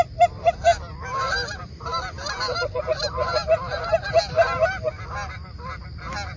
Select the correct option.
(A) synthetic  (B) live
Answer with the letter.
B